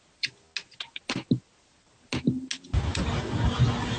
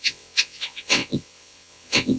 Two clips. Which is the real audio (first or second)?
first